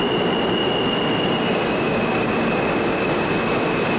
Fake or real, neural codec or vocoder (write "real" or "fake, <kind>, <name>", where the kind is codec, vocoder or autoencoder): real